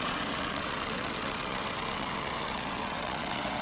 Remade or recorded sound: remade